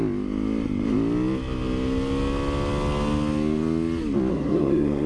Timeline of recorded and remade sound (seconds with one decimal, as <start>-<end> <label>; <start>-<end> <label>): 0.0-4.3 recorded; 4.3-5.1 remade